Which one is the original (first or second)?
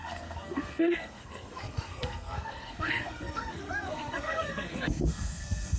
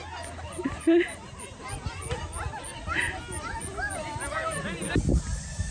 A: second